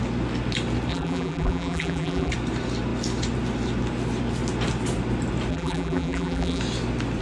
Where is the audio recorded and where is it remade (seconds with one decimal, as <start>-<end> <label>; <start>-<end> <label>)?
0.0-0.9 recorded; 0.9-2.3 remade; 2.3-5.5 recorded; 5.5-6.6 remade; 6.6-7.2 recorded